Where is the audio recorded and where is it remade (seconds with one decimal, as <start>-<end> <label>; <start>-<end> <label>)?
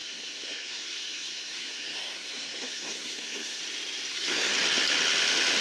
0.0-3.6 remade; 3.6-4.1 recorded; 4.1-4.5 remade; 4.5-5.6 recorded